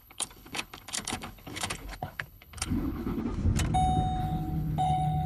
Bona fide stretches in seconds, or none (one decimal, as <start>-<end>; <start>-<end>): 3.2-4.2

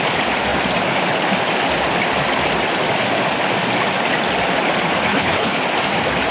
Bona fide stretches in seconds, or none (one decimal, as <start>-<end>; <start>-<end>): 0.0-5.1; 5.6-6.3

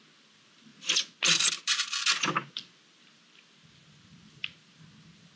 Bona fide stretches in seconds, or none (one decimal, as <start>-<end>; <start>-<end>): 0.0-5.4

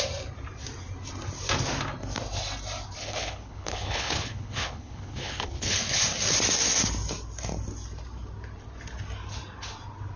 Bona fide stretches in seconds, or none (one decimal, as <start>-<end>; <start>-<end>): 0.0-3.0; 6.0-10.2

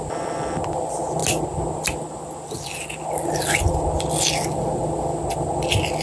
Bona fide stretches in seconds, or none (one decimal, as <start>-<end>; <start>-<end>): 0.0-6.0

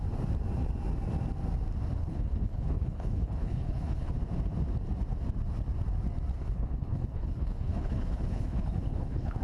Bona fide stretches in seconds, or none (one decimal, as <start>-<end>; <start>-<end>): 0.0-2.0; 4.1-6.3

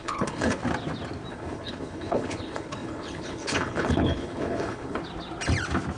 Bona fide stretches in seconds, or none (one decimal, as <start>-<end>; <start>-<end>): 0.6-1.3; 5.0-6.0

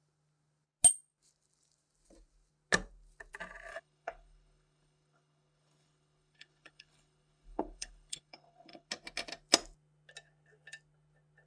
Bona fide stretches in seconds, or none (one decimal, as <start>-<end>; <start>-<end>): 0.0-3.7; 8.9-11.5